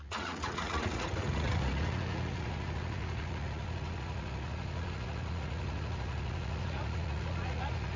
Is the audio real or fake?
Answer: fake